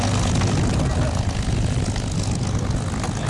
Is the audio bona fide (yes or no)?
yes